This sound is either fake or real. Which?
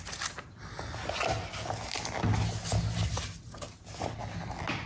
real